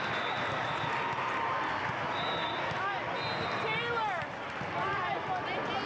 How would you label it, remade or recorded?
recorded